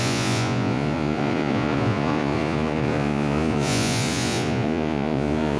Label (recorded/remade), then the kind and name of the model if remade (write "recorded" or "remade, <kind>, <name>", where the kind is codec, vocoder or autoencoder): remade, vocoder, Vocos